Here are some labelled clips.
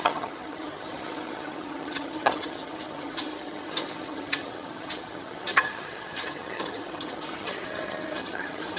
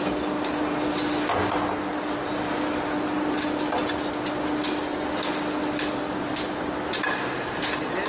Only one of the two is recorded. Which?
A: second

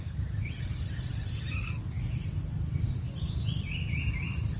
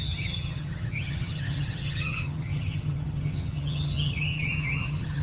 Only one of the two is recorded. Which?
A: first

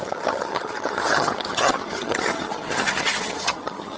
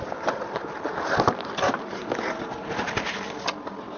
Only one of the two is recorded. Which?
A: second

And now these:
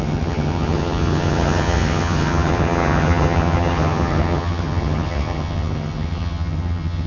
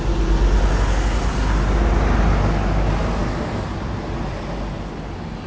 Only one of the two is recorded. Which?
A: second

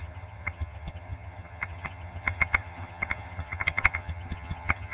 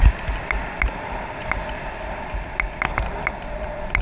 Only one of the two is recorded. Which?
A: second